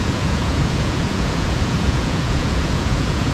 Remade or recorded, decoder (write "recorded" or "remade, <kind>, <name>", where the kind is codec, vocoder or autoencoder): remade, vocoder, Vocos